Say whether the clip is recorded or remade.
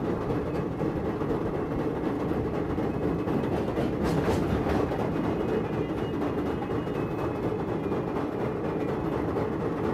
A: recorded